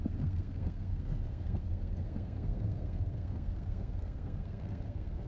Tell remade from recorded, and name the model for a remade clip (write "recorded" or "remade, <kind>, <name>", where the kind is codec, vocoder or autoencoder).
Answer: remade, codec, SNAC